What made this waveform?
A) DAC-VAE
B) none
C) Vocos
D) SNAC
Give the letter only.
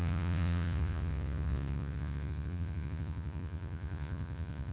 C